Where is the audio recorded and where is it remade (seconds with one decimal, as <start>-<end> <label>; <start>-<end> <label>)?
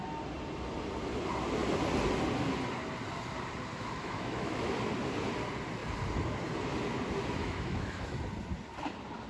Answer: 0.0-3.7 recorded; 3.7-4.7 remade; 4.7-7.4 recorded; 7.4-8.2 remade; 8.2-9.3 recorded